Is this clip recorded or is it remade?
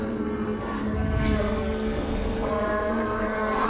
remade